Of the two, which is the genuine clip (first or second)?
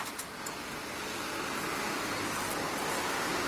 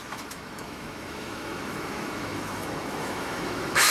first